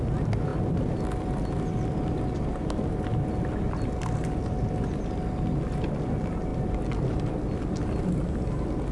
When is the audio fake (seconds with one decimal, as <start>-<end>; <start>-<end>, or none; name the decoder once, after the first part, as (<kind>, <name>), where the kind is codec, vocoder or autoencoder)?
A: none